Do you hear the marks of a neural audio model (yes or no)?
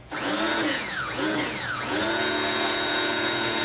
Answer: yes